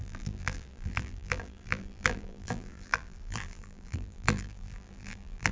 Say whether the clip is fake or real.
fake